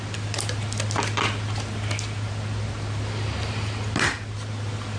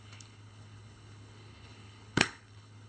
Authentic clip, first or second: first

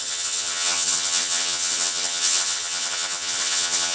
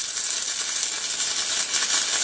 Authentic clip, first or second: second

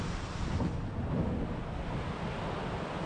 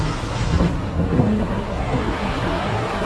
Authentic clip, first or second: first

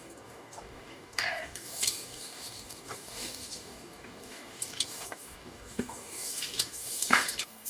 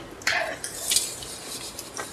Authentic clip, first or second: second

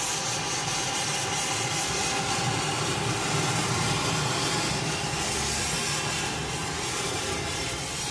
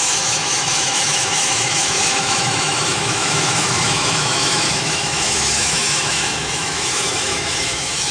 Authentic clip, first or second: first